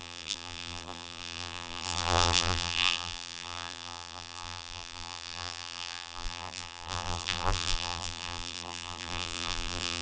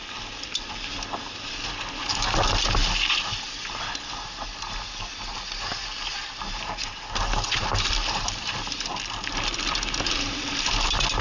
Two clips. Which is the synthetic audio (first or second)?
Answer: first